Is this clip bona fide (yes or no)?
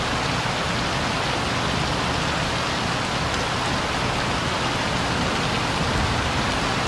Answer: yes